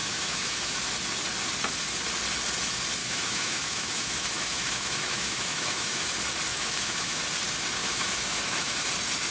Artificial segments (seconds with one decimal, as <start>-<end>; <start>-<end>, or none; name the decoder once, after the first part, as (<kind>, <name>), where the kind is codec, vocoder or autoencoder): 0.0-0.8 (autoencoder, DAC-VAE); 3.0-6.1; 6.5-7.2; 7.8-8.9